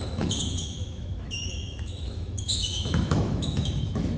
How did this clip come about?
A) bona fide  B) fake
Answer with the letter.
B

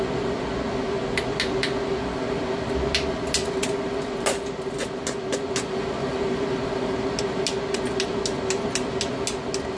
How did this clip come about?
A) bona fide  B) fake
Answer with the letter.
A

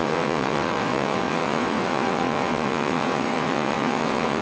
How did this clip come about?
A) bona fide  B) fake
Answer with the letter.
B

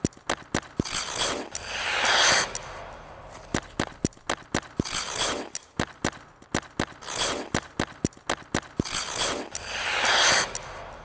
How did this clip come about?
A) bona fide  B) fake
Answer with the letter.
A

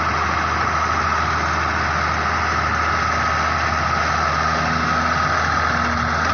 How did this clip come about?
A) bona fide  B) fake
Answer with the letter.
A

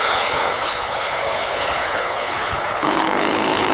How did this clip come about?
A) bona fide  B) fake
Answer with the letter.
B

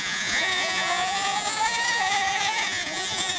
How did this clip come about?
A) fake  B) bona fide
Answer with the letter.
A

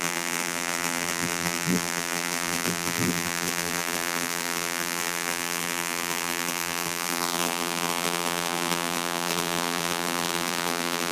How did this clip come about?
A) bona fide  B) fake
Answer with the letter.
B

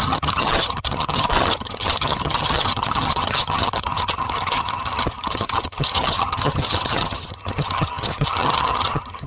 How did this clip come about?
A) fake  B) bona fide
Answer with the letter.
A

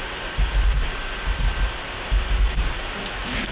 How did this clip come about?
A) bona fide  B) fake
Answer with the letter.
A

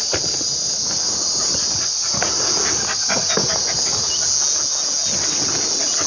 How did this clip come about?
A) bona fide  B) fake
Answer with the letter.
A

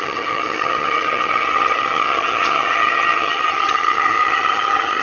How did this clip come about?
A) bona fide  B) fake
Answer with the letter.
B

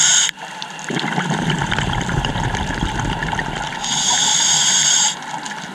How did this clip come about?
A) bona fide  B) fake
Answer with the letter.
A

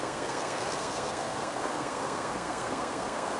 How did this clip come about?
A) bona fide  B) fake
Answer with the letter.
B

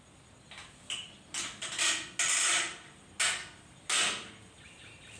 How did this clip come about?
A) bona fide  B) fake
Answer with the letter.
A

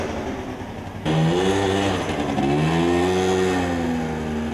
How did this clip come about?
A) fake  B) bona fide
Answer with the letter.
B